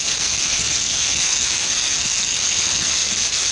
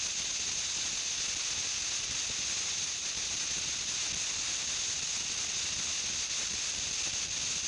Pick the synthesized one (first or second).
first